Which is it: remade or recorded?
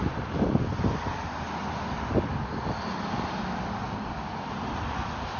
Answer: recorded